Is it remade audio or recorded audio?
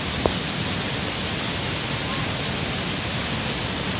recorded